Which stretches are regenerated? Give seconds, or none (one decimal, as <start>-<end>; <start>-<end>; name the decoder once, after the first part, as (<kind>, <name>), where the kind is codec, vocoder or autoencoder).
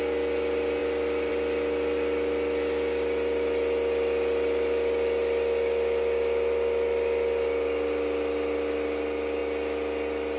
none